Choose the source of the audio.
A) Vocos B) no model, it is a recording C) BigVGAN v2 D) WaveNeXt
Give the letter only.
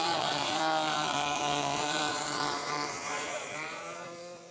A